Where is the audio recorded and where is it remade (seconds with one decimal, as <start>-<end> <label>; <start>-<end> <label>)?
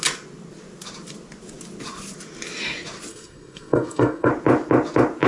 0.0-3.1 recorded; 3.1-4.3 remade; 4.3-5.3 recorded